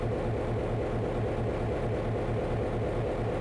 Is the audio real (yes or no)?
yes